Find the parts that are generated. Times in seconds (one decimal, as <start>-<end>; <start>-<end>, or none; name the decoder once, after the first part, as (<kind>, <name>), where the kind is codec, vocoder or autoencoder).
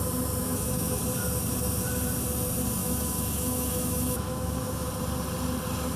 0.4-1.0 (autoencoder, DAC-VAE); 2.8-4.9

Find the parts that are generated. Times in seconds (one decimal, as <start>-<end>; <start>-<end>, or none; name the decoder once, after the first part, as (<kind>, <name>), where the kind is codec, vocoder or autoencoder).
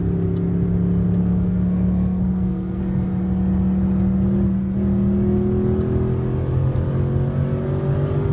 1.2-2.8 (codec, SNAC)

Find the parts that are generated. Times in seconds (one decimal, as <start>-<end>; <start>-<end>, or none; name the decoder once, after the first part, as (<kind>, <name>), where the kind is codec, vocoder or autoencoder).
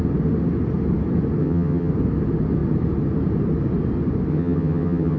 1.4-1.9 (vocoder, HiFi-GAN); 4.3-5.2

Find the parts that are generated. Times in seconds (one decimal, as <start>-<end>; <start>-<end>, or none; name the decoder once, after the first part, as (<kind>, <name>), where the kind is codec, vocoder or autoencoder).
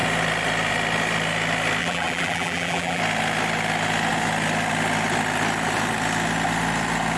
1.8-3.0 (vocoder, BigVGAN v2)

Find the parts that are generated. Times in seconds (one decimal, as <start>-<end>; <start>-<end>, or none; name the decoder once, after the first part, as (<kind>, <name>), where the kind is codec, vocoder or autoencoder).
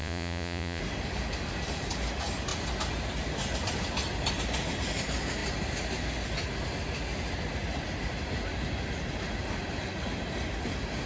0.0-0.8 (vocoder, Vocos)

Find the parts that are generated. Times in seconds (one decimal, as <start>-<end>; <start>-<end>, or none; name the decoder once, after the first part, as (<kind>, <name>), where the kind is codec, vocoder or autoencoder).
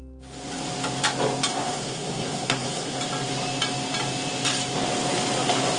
1.5-3.0 (codec, SNAC)